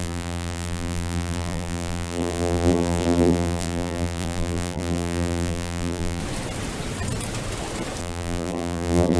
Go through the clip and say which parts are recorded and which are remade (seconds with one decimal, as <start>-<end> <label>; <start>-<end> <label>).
0.0-6.2 remade; 6.2-8.0 recorded; 8.0-9.2 remade

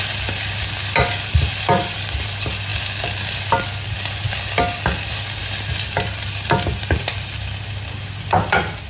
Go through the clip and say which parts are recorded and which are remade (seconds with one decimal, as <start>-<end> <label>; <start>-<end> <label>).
0.0-8.9 recorded

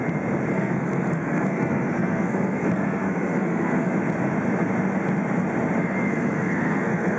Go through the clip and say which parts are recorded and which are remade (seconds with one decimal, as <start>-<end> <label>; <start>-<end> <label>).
0.0-0.5 recorded; 0.5-3.9 remade; 3.9-5.8 recorded; 5.8-7.2 remade

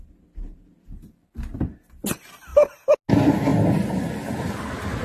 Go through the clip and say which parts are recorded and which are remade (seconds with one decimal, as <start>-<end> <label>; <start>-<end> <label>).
0.0-3.5 recorded; 3.5-4.3 remade; 4.3-5.0 recorded